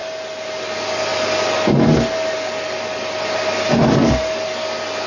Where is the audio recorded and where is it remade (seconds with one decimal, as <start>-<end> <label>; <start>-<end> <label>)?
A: 0.0-5.1 recorded